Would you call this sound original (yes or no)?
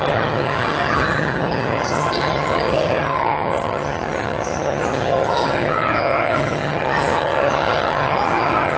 no